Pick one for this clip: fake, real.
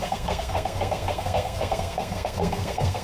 fake